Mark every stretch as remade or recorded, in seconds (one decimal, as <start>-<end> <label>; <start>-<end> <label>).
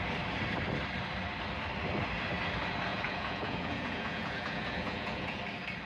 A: 0.0-2.9 recorded; 2.9-5.4 remade; 5.4-5.9 recorded